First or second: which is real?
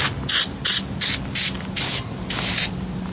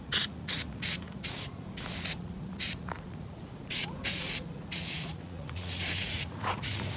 first